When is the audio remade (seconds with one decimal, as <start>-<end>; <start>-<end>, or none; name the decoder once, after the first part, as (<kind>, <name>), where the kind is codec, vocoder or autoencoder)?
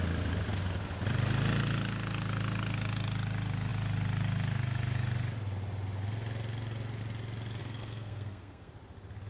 7.6-8.7 (codec, SNAC)